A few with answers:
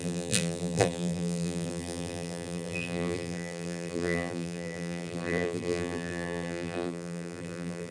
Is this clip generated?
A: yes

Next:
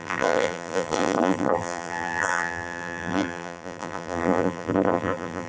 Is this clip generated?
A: yes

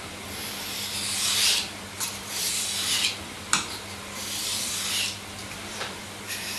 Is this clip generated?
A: yes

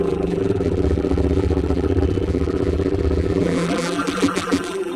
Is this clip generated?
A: yes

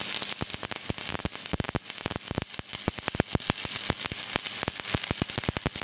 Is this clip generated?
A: no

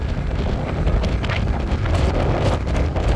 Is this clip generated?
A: no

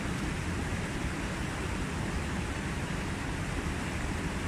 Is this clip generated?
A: no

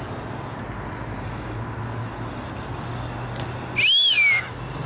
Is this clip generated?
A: no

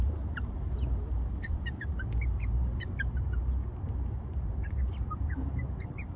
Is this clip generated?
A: yes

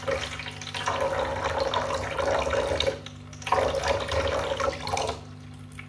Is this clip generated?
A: no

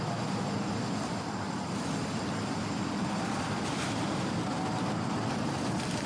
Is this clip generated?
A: yes